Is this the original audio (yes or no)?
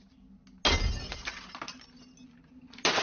yes